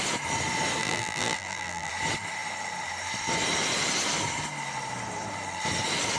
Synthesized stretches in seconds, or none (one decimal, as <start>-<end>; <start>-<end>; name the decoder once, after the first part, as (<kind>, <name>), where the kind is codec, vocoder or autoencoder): 0.8-1.9 (vocoder, BigVGAN v2)